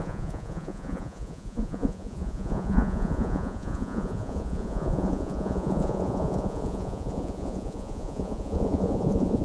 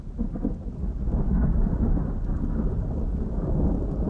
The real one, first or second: second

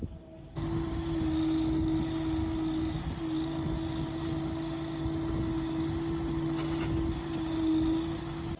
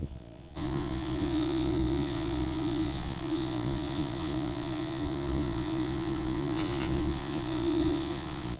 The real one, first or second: first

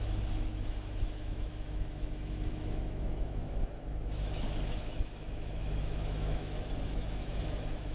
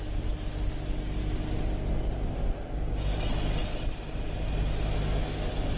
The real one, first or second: second